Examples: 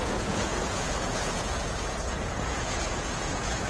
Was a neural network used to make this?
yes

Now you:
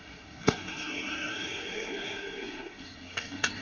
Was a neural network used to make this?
yes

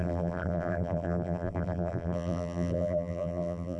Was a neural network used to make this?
yes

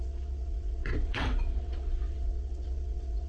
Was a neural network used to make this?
yes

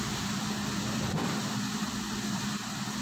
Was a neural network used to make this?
yes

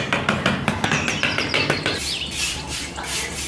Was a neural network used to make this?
no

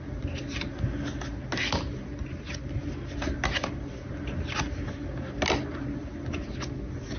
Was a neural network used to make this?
no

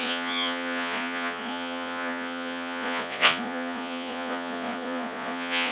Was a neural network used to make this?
yes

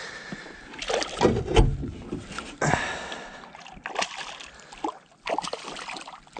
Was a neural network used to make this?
no